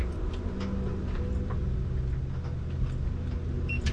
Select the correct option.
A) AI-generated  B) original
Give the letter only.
B